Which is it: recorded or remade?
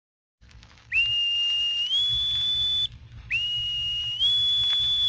recorded